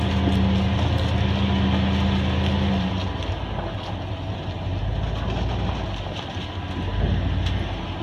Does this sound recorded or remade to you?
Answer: recorded